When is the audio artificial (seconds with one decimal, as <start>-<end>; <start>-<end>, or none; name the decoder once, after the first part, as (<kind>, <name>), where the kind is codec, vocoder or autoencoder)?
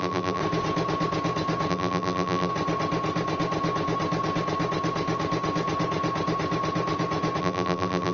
0.0-0.4 (vocoder, BigVGAN v2); 1.7-2.5; 7.4-8.1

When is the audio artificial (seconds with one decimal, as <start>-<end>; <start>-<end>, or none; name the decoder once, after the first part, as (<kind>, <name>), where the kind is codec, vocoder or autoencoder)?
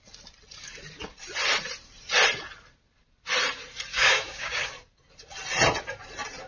3.9-4.7 (codec, DAC)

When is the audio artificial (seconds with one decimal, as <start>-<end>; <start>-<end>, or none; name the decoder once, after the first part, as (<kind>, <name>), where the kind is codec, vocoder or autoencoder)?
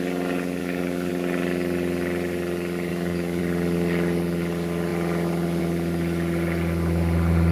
0.6-1.1 (codec, DAC); 2.9-3.4